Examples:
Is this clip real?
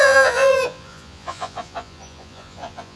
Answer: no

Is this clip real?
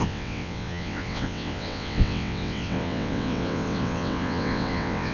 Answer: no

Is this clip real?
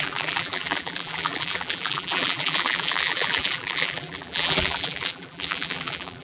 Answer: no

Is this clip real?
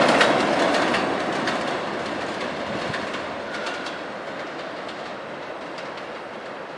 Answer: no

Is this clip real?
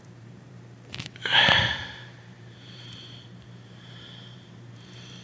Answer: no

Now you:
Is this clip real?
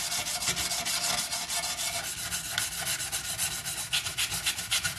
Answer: yes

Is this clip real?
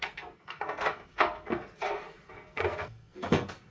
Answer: no